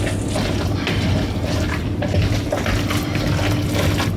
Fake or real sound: real